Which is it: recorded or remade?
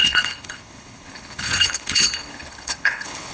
remade